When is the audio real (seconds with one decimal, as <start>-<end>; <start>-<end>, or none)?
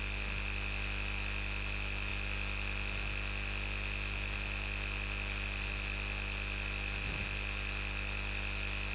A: 0.0-8.9